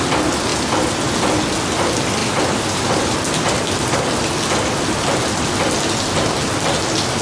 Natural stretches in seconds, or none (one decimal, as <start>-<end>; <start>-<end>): 0.0-2.2; 3.6-7.2